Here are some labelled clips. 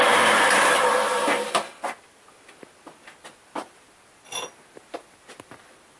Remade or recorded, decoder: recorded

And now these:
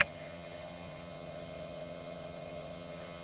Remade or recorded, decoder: remade, vocoder, HiFi-GAN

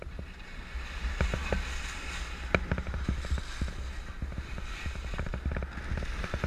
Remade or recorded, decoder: recorded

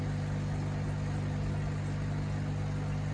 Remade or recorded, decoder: recorded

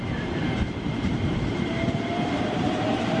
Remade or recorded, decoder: remade, vocoder, BigVGAN v2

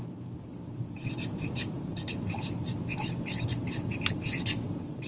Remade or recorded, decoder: remade, vocoder, BigVGAN v2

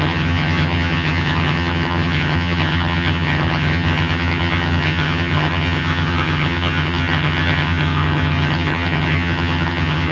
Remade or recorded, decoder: remade, vocoder, HiFi-GAN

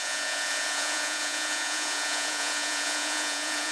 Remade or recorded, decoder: remade, vocoder, Vocos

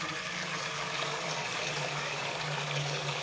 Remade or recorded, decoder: remade, codec, DAC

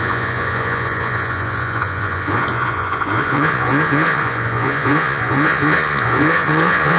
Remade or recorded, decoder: remade, vocoder, Vocos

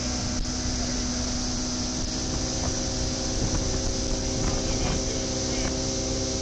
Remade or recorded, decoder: recorded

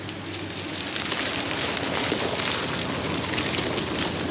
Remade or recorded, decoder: recorded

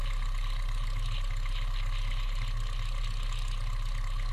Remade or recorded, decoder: recorded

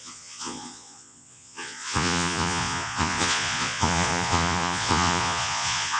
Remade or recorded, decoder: remade, vocoder, Vocos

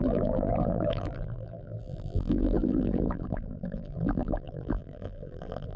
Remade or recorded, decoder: remade, vocoder, BigVGAN v2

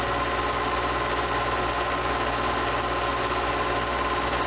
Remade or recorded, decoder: recorded